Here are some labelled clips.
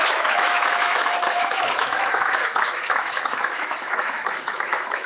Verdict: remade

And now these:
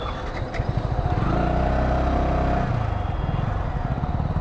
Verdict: recorded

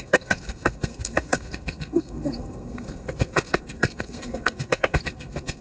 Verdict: remade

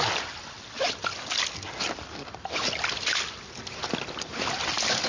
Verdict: recorded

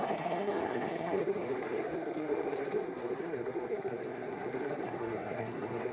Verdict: remade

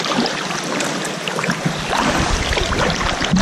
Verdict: remade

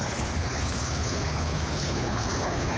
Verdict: remade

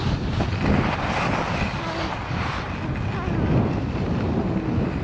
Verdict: recorded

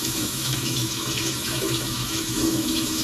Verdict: remade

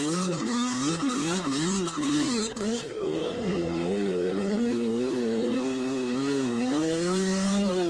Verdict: remade